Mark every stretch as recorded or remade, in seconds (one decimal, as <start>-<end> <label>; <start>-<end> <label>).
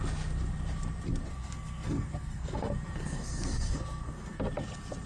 0.0-1.3 recorded; 1.3-4.4 remade; 4.4-5.1 recorded